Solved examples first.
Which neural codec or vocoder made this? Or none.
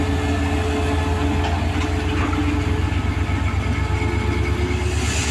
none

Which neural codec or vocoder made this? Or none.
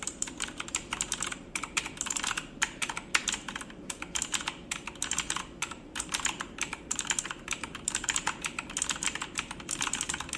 vocoder, BigVGAN v2